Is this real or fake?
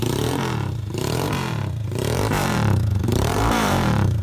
fake